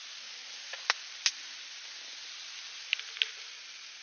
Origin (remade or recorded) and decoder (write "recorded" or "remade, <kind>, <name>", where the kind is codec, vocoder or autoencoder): recorded